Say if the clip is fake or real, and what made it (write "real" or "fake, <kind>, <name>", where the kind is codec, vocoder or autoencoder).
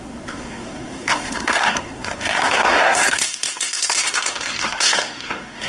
fake, codec, SNAC